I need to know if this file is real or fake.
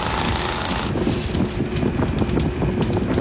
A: real